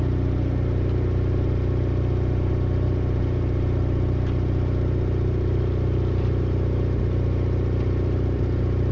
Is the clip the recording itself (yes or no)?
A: yes